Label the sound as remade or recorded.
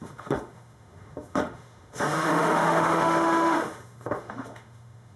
remade